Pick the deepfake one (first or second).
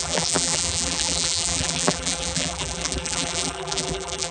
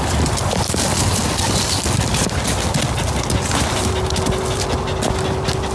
first